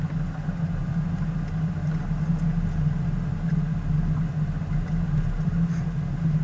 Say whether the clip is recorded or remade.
recorded